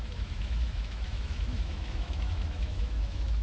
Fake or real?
fake